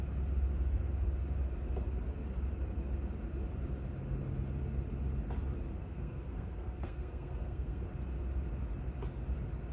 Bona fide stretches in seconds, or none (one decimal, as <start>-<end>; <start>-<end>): 0.0-5.8; 7.8-9.7